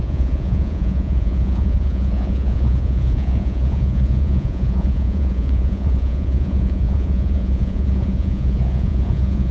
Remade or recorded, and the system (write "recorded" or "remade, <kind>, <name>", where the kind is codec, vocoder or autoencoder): remade, vocoder, Vocos